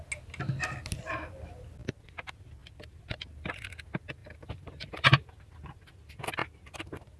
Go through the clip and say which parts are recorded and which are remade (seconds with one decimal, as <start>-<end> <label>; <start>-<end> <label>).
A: 0.0-2.6 recorded; 2.6-3.2 remade; 3.2-4.2 recorded; 4.2-5.9 remade; 5.9-7.2 recorded

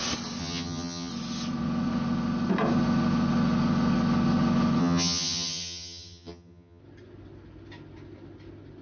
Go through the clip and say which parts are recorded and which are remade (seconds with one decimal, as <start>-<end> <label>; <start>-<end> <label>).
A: 0.0-0.4 recorded; 0.4-1.1 remade; 1.1-4.8 recorded; 4.8-6.8 remade; 6.8-8.8 recorded

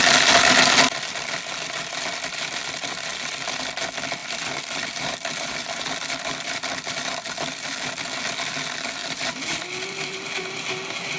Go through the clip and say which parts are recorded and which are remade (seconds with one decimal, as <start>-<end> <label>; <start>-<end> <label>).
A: 0.0-4.2 recorded; 4.2-7.8 remade; 7.8-9.0 recorded; 9.0-10.3 remade; 10.3-11.2 recorded

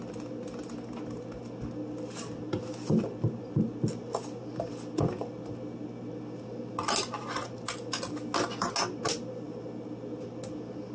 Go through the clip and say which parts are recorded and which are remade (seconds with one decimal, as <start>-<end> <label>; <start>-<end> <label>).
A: 0.0-10.9 recorded

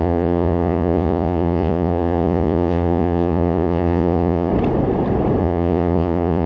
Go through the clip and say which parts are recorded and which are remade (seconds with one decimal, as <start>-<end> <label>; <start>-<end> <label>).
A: 0.0-4.5 remade; 4.5-5.4 recorded; 5.4-6.5 remade